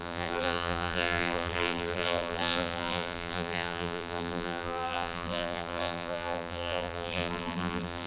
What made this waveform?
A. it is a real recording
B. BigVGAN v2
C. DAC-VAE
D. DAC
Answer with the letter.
B